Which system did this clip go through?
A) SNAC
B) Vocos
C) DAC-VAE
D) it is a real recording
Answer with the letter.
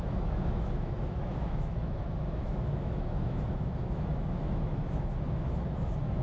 C